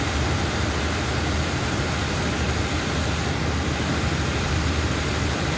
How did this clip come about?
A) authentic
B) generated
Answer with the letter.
B